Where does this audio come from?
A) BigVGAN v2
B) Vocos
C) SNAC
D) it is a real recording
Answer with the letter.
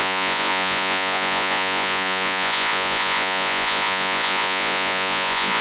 B